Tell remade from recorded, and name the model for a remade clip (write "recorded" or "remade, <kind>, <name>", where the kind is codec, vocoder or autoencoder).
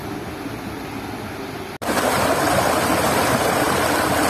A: recorded